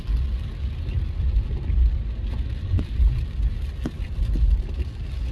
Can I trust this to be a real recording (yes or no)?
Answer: yes